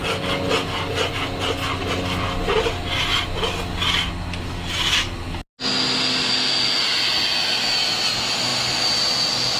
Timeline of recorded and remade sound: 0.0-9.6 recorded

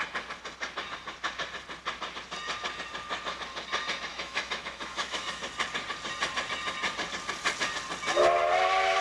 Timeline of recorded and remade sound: 0.0-4.1 recorded; 4.1-5.4 remade; 5.4-9.0 recorded

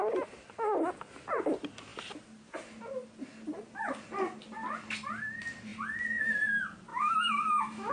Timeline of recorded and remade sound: 0.0-6.9 recorded; 6.9-7.9 remade